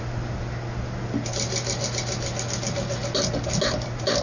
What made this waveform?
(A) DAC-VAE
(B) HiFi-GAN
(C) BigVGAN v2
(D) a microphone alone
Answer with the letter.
D